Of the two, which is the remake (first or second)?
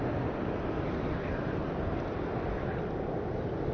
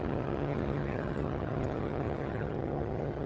second